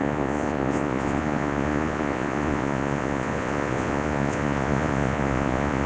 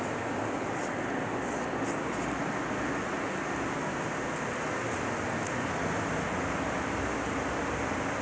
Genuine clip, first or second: second